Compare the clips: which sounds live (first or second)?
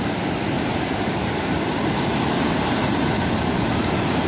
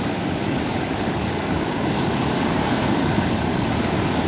first